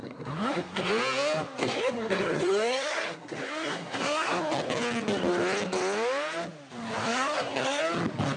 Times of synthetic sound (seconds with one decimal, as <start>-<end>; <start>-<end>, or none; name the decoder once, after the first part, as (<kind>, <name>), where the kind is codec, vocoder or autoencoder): 0.0-0.9 (codec, SNAC); 1.6-4.4; 7.0-7.8